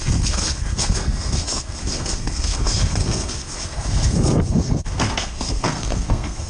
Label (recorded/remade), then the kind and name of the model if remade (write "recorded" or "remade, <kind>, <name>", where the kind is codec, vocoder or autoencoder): remade, codec, SNAC